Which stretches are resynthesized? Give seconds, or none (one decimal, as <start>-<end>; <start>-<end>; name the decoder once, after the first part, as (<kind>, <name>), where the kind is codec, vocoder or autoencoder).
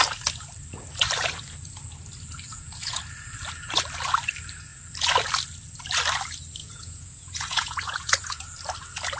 2.5-3.0 (vocoder, Vocos); 6.6-8.4